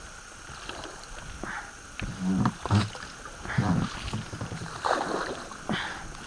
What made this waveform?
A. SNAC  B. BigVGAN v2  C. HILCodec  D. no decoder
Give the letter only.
D